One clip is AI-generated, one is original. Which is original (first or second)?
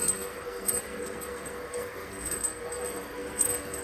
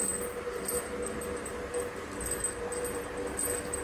second